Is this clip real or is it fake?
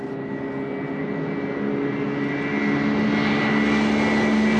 real